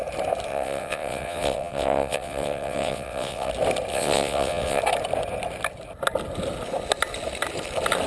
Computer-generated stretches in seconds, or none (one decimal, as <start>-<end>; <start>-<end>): 0.5-3.5; 3.9-4.8